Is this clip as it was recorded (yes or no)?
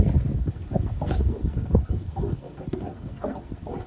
no